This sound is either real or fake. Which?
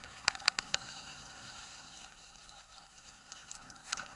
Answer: fake